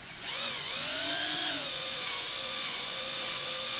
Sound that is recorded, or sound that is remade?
remade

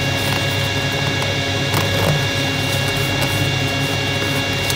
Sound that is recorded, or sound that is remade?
recorded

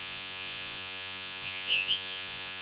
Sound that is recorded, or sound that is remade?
remade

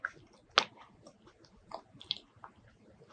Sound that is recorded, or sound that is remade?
recorded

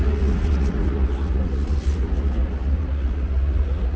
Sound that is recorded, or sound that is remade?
remade